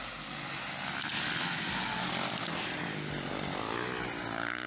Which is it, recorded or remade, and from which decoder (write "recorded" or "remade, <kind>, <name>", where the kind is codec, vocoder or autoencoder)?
recorded